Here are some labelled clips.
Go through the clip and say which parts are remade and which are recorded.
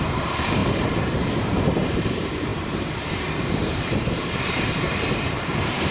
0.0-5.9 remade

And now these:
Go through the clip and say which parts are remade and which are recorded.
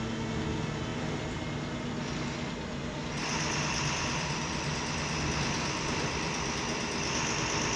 0.0-3.2 recorded; 3.2-6.9 remade; 6.9-7.8 recorded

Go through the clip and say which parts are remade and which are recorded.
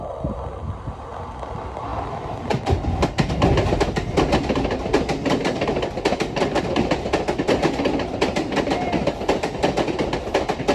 0.0-10.7 recorded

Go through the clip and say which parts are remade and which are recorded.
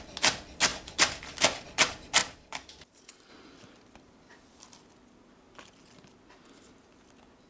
0.0-0.7 recorded; 0.7-1.3 remade; 1.3-2.2 recorded; 2.2-3.3 remade; 3.3-7.5 recorded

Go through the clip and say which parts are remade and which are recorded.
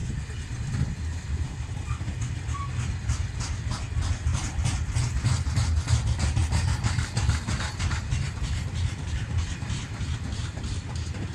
0.0-4.3 recorded; 4.3-5.0 remade; 5.0-6.4 recorded; 6.4-10.0 remade; 10.0-11.3 recorded